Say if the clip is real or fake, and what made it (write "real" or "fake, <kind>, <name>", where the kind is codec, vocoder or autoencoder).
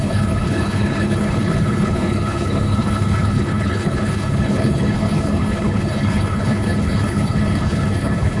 fake, codec, HILCodec